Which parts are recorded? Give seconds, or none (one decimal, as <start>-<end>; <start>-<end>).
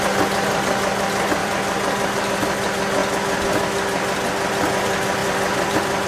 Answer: 0.0-1.4; 2.2-5.2